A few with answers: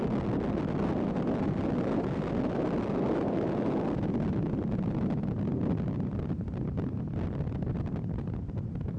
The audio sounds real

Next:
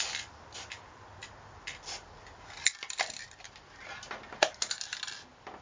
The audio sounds real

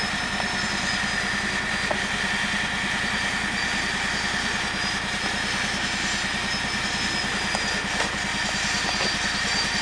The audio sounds real